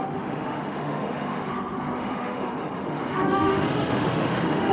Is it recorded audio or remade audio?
remade